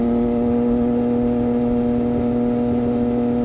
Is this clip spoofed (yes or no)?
no